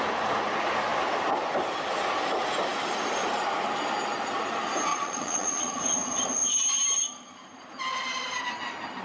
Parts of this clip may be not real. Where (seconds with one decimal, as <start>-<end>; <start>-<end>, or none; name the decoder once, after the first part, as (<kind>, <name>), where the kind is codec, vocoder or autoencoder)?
4.9-5.8 (vocoder, Vocos)